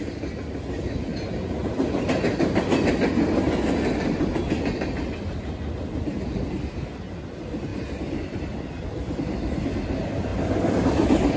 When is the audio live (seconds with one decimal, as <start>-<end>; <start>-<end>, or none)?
0.0-11.4